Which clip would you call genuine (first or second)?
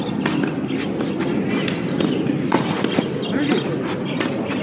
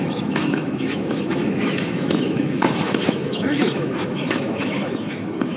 first